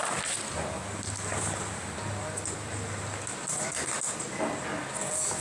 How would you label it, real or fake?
real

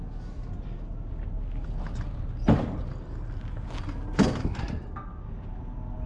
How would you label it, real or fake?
real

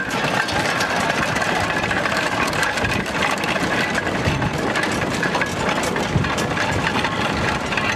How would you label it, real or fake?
fake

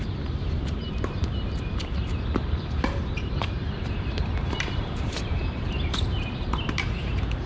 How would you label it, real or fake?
fake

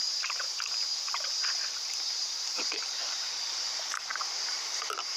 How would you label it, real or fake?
fake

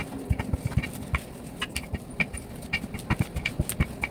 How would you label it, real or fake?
real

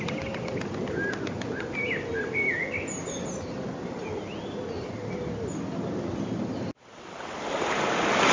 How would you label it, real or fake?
real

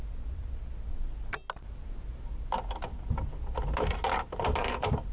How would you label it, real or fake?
real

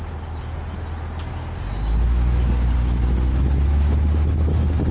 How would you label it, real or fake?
real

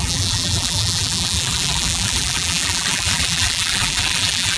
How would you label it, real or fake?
fake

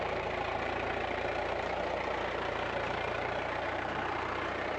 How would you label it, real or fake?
fake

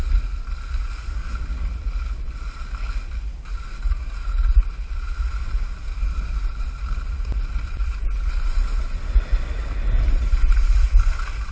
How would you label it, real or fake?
real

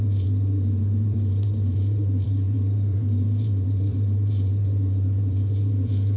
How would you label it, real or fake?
fake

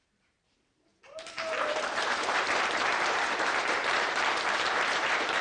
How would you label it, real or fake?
fake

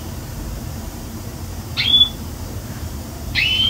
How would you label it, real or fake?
fake